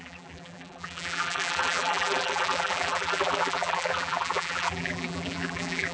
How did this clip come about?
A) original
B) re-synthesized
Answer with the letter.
B